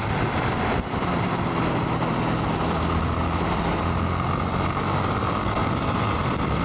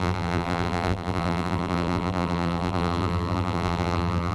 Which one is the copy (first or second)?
second